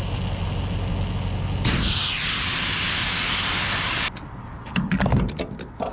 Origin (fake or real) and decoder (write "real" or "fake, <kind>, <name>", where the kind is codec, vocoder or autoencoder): real